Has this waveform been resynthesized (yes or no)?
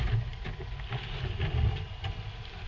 no